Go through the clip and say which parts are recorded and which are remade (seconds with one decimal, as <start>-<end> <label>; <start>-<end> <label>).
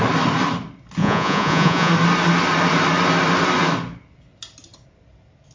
0.0-1.0 recorded; 1.0-1.9 remade; 1.9-5.5 recorded